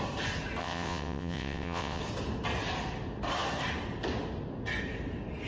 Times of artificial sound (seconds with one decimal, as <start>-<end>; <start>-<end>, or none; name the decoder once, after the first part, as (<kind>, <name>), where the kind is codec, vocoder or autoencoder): 0.6-2.0 (vocoder, WaveNeXt)